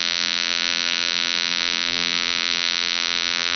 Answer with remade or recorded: remade